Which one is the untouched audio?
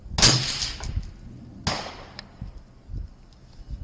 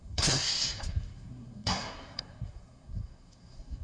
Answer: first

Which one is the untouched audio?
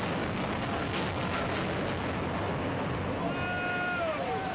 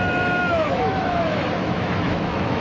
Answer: first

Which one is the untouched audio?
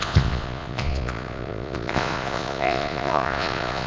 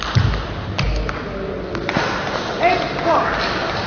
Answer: second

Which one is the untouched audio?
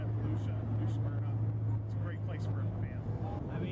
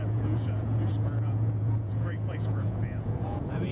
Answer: first